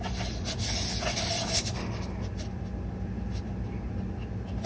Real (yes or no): yes